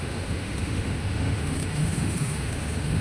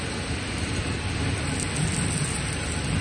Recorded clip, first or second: second